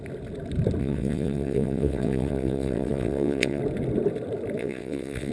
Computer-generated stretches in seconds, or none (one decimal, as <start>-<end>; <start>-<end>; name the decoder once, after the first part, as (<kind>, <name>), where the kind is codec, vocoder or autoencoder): 0.8-3.6 (vocoder, WaveNeXt); 4.6-5.3